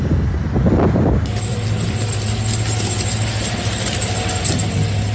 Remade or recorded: recorded